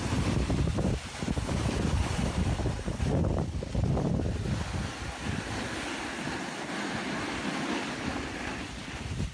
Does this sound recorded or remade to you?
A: recorded